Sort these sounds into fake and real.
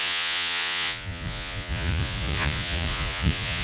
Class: fake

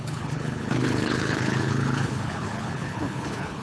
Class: fake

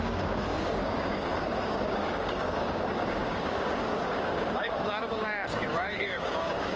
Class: fake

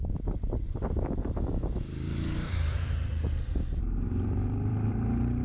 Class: fake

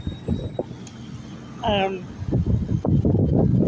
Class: real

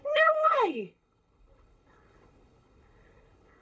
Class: fake